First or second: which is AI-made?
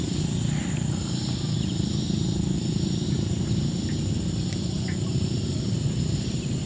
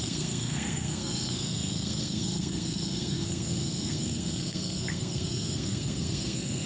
second